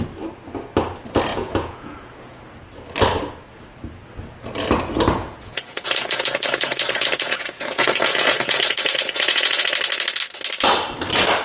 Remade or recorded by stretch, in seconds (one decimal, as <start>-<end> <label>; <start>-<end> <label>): 0.0-1.3 recorded; 1.3-2.4 remade; 2.4-5.2 recorded; 5.2-9.6 remade; 9.6-11.4 recorded